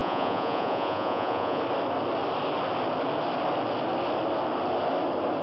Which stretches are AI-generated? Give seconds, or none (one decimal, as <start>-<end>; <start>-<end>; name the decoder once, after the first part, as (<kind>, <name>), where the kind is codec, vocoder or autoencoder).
0.0-1.6 (vocoder, Vocos)